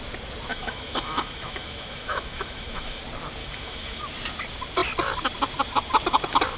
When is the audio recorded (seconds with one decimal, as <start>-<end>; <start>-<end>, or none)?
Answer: 0.0-0.5; 3.0-3.4; 4.0-6.6